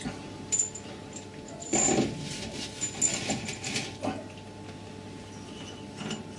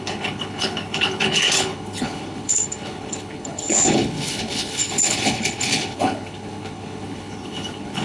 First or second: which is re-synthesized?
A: second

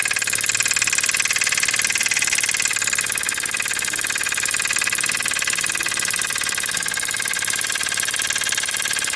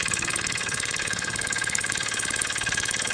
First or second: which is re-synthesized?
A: second